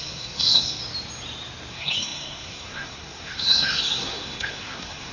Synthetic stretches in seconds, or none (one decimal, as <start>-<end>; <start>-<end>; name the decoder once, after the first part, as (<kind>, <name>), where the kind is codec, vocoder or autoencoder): 0.0-0.8 (codec, SNAC); 1.7-5.1